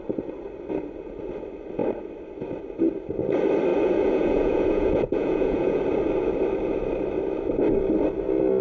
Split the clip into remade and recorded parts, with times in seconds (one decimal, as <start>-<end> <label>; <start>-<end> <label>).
0.0-3.7 recorded; 3.7-5.8 remade; 5.8-8.6 recorded